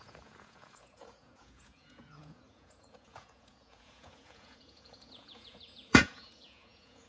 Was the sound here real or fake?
fake